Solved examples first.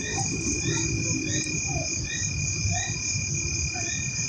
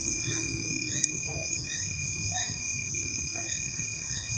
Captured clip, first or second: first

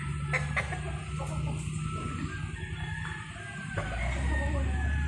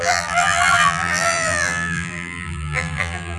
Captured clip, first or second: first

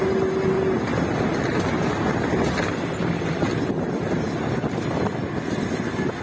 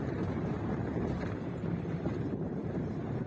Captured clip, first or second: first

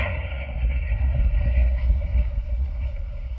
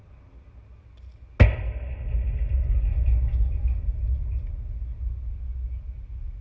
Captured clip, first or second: second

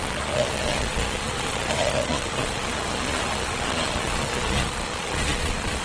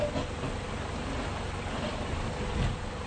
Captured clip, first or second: second